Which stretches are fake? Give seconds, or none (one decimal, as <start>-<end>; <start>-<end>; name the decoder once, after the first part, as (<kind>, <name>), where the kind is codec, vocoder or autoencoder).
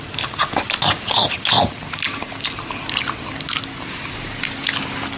none